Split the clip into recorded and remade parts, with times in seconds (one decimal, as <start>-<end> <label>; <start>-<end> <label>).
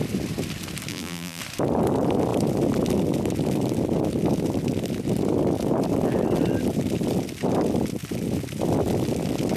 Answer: 0.0-0.9 recorded; 0.9-1.4 remade; 1.4-9.6 recorded